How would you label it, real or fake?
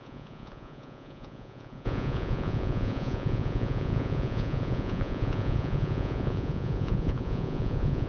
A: fake